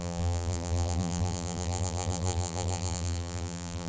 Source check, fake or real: fake